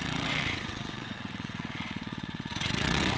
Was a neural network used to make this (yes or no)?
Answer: yes